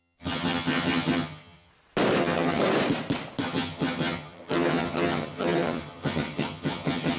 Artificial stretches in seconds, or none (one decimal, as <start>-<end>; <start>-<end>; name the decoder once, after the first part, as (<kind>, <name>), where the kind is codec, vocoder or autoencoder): 0.0-1.7 (vocoder, HiFi-GAN); 2.2-2.6; 3.4-7.2